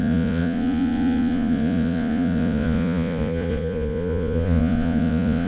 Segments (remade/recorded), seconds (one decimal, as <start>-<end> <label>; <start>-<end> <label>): 0.0-5.5 remade